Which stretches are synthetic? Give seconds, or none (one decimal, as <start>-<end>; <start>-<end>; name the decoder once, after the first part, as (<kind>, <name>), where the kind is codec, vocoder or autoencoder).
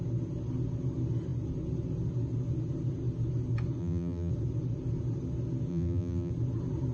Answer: 3.8-4.3 (vocoder, BigVGAN v2); 5.7-6.3